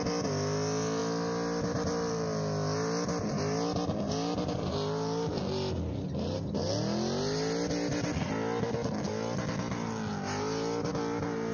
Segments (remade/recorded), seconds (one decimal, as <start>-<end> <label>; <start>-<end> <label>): 0.0-11.5 recorded